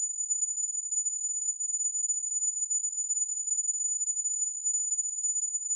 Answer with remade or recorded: remade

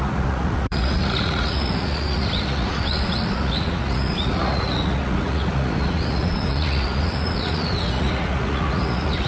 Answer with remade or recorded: remade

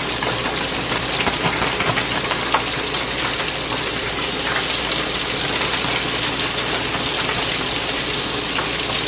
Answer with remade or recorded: recorded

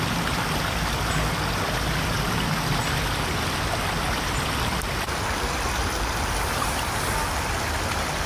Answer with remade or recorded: recorded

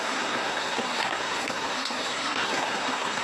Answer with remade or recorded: remade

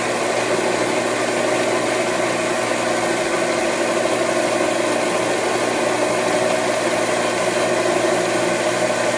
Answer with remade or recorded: recorded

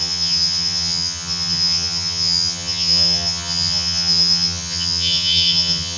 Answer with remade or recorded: remade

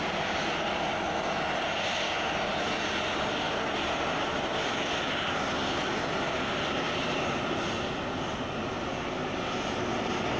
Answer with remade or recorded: recorded